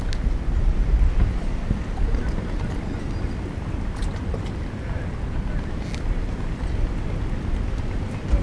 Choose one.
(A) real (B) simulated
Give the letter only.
A